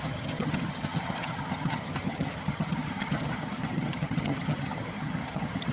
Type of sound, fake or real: fake